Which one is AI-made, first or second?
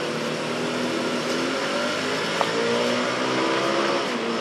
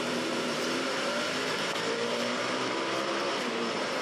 second